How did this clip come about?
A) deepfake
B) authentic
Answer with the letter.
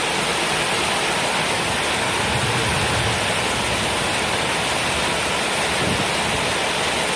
B